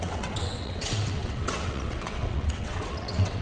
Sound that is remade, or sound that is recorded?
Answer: remade